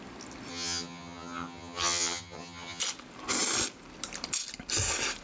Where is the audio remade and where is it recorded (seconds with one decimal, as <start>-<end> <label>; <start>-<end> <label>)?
0.0-0.5 recorded; 0.5-2.8 remade; 2.8-5.2 recorded